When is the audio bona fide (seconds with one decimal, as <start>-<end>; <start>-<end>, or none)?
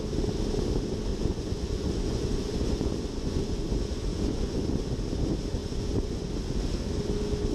0.0-1.1; 4.8-5.6; 6.3-7.5